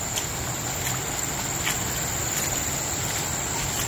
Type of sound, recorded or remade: recorded